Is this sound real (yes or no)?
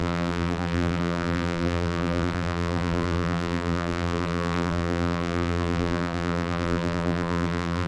no